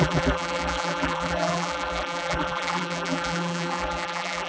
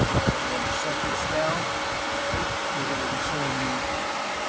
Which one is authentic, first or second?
second